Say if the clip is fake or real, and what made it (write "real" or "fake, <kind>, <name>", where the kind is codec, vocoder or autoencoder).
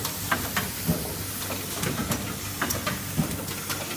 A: real